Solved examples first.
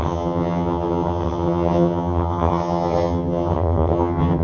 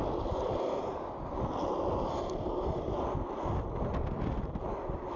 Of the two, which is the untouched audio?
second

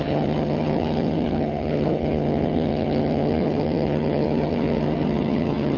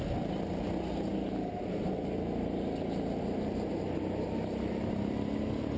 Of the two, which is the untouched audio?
second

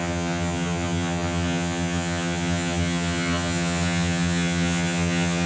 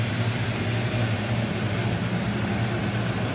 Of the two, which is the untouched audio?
second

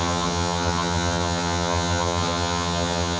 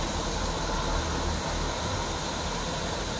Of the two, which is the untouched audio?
second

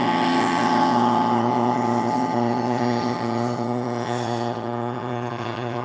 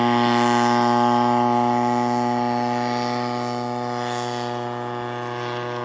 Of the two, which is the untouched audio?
second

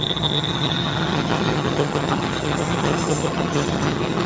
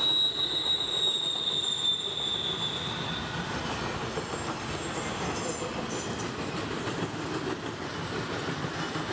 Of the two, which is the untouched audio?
second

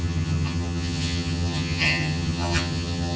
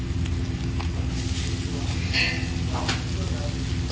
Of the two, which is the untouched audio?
second